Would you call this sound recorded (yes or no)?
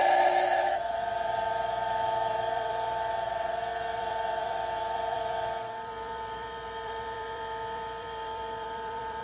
no